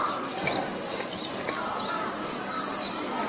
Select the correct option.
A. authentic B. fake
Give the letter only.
A